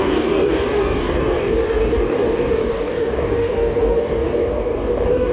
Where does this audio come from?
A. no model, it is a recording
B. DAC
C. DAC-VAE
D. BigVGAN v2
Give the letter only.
B